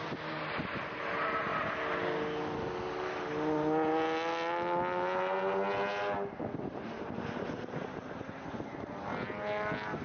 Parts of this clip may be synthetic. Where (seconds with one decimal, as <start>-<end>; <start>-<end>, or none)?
none

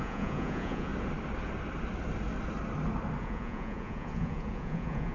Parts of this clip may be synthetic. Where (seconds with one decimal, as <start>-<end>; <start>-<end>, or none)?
0.0-0.9; 3.2-5.1

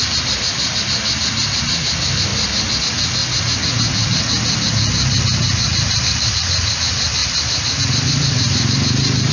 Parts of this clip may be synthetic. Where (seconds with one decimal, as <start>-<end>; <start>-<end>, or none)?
2.3-2.8; 7.2-7.8

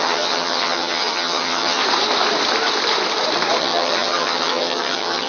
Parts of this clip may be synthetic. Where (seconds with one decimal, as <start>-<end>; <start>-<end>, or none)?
0.0-1.8; 3.6-5.3

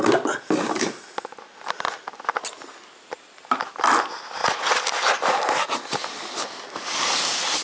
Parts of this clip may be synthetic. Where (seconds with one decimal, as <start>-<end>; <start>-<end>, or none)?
none

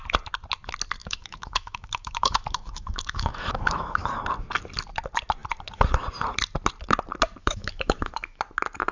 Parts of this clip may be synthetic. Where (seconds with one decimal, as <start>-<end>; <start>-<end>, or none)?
1.0-4.1; 7.4-8.4